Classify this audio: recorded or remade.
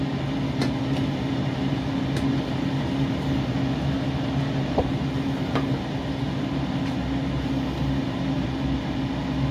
recorded